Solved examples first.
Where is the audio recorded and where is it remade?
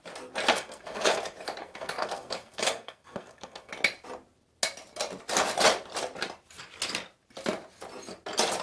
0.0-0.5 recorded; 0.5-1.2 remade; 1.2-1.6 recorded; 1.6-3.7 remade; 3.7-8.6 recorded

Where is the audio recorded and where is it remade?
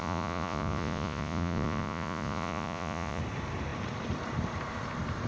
0.0-3.2 remade; 3.2-5.3 recorded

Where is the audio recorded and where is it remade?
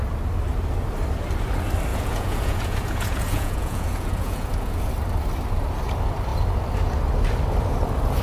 0.0-1.9 recorded; 1.9-4.9 remade; 4.9-8.2 recorded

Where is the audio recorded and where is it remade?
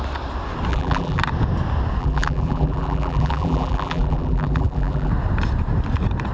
0.0-0.7 recorded; 0.7-1.2 remade; 1.2-2.0 recorded; 2.0-5.1 remade; 5.1-6.3 recorded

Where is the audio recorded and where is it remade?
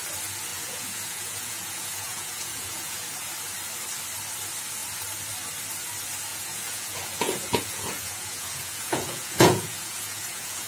0.0-0.5 recorded; 0.5-3.3 remade; 3.3-6.3 recorded; 6.3-10.7 remade